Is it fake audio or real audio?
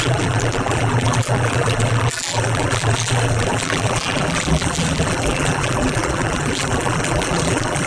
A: fake